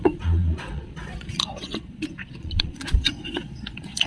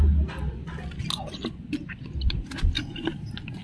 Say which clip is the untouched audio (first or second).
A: second